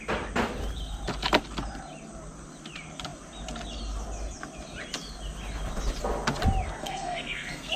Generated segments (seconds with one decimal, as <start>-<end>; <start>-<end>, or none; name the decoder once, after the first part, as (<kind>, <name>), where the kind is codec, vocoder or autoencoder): 6.8-7.8 (codec, SNAC)